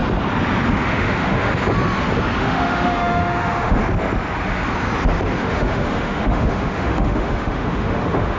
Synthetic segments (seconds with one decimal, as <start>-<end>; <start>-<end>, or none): 0.7-1.5; 2.4-3.8; 5.4-8.4